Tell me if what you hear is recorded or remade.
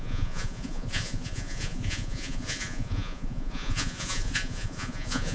remade